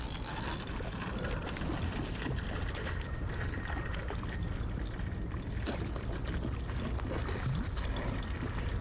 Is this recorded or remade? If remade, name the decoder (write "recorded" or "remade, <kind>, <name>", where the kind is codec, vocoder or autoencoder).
recorded